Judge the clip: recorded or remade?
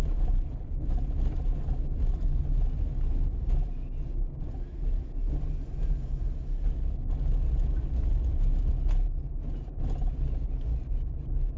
recorded